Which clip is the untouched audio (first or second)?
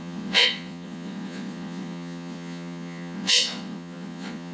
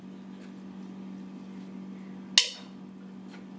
second